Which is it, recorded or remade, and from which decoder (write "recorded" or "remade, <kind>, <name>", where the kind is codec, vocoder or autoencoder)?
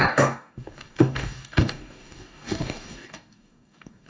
remade, codec, DAC